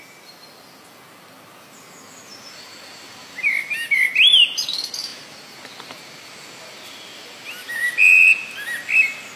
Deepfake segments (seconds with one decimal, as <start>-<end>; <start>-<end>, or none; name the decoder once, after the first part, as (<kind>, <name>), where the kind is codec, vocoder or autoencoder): none